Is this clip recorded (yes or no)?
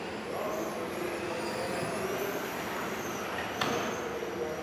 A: yes